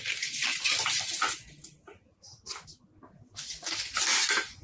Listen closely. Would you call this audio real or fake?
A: real